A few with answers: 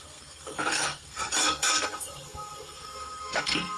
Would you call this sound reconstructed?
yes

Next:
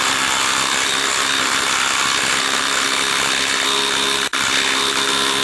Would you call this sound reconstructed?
no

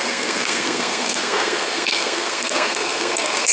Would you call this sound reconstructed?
yes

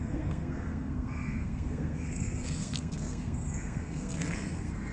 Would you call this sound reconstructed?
yes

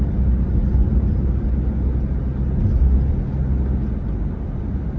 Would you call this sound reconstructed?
no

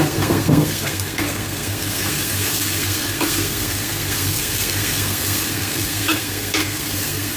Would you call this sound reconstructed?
yes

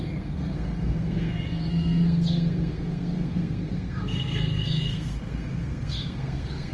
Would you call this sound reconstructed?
yes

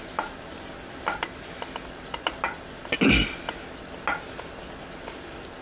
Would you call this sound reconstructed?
no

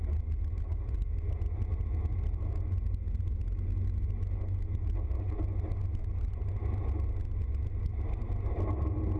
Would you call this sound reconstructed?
no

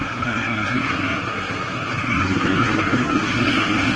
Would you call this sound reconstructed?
yes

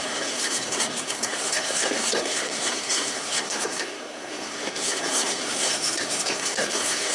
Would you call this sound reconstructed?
yes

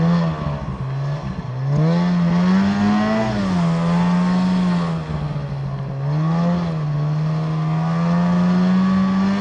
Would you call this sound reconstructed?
no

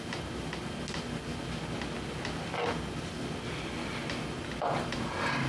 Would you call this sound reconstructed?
no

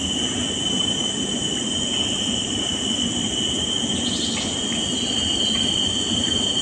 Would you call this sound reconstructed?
no